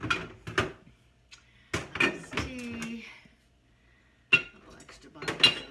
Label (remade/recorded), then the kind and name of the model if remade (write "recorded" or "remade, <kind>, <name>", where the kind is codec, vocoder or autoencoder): recorded